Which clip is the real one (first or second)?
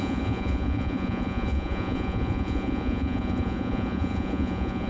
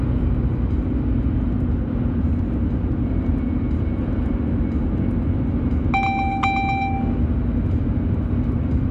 second